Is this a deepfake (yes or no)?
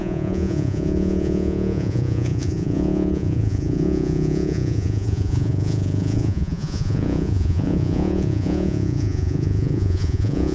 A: yes